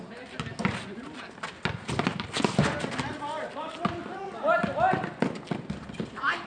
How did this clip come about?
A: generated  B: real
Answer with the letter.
B